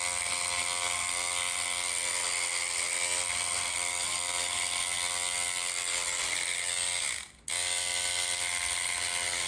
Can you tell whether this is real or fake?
real